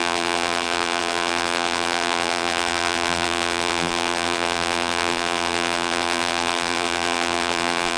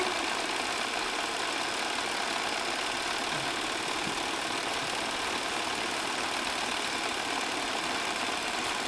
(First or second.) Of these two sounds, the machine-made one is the first